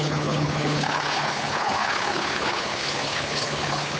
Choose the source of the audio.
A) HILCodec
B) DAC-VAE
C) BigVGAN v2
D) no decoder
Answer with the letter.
A